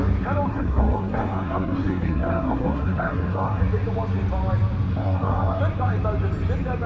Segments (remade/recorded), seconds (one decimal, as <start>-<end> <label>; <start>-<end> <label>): 0.0-0.5 recorded; 0.5-3.6 remade; 3.6-4.9 recorded; 4.9-5.6 remade; 5.6-6.9 recorded